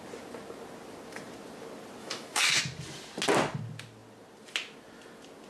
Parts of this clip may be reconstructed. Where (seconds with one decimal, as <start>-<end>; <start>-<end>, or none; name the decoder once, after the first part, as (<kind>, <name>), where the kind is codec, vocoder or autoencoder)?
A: 2.0-2.6 (autoencoder, DAC-VAE)